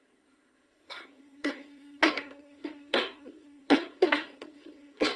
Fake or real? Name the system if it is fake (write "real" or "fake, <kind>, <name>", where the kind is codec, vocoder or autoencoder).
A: fake, codec, SNAC